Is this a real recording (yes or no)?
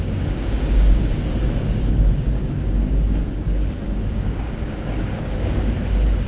no